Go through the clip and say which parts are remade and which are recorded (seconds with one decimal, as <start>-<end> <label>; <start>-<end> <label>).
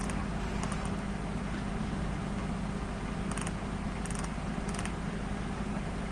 0.0-6.1 recorded